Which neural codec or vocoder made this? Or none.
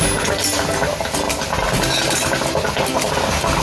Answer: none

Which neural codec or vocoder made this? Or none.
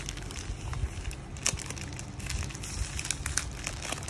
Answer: none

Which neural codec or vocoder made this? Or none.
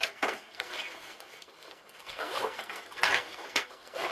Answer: codec, SNAC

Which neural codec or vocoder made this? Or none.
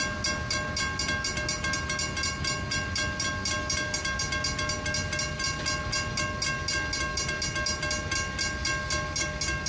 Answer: none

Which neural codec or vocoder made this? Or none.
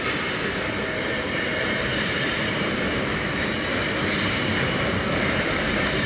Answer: vocoder, BigVGAN v2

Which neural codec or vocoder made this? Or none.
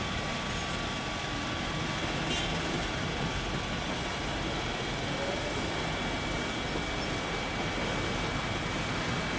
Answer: none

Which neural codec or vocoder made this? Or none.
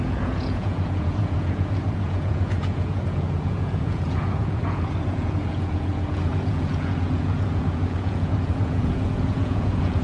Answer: vocoder, Vocos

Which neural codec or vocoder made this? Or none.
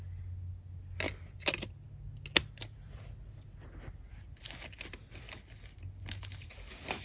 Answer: none